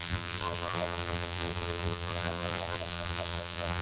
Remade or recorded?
remade